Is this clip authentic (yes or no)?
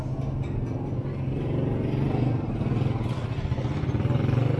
yes